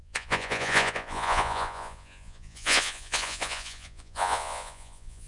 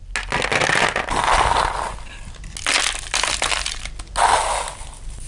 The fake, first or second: first